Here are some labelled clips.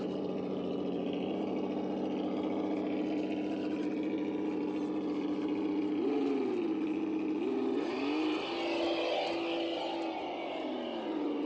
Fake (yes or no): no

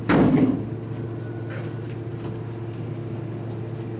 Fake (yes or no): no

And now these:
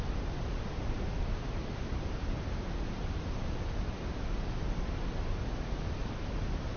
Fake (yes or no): no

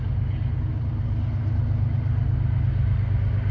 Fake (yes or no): no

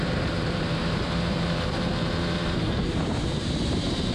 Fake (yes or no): yes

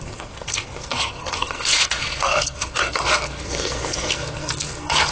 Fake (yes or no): yes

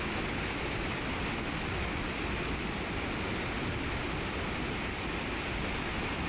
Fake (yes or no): no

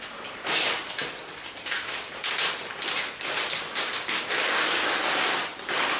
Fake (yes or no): no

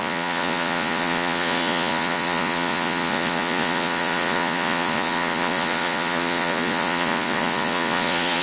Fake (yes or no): yes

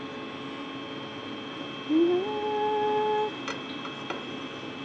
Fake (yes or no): no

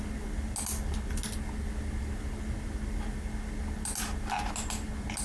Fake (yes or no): no